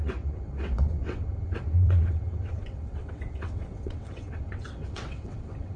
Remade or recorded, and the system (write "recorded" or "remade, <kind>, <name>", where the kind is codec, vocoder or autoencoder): remade, vocoder, WaveNeXt